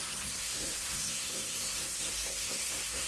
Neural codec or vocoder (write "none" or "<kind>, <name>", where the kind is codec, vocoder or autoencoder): codec, SNAC